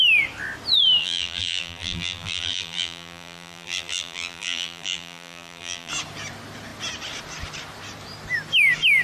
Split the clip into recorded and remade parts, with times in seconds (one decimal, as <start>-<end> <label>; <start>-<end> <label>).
0.0-1.0 recorded; 1.0-5.9 remade; 5.9-9.0 recorded